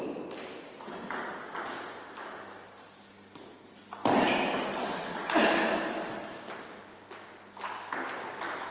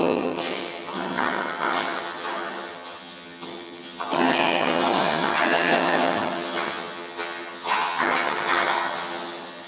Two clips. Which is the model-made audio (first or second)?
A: second